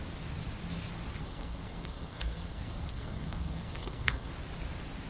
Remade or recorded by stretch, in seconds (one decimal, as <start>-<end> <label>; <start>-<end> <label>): 0.0-1.2 recorded; 1.2-4.3 remade; 4.3-5.1 recorded